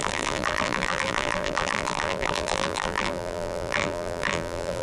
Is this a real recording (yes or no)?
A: no